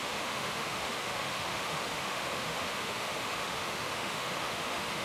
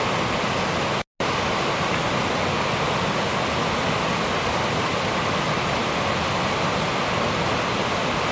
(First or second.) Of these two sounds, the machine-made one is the first